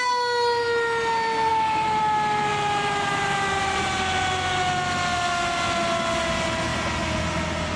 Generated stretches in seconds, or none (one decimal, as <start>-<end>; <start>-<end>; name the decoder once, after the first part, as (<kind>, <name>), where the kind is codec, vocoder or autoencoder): 1.5-2.0 (vocoder, BigVGAN v2); 2.5-3.8